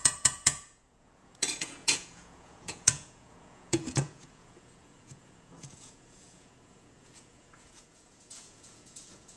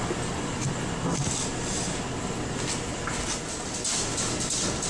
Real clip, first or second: second